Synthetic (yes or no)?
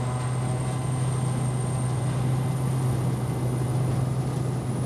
no